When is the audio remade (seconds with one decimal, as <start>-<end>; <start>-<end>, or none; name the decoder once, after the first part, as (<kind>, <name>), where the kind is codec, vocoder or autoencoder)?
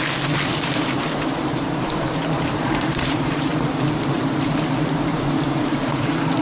0.0-3.5 (vocoder, BigVGAN v2); 4.0-6.4